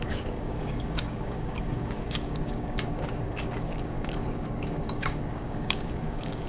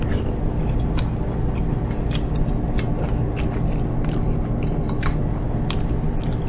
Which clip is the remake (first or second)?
first